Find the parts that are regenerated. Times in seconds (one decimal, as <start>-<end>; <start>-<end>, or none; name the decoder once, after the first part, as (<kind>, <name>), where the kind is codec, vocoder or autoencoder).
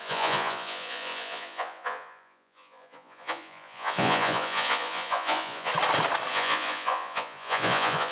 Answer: 0.0-5.7 (vocoder, Vocos); 6.3-8.1